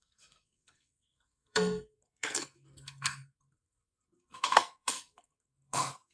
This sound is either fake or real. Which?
fake